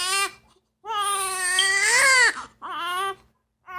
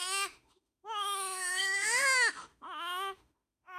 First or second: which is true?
first